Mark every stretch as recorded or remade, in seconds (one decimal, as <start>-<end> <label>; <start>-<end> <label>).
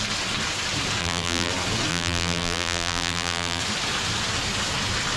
0.0-1.0 recorded; 1.0-1.5 remade; 1.5-1.9 recorded; 1.9-3.6 remade; 3.6-5.2 recorded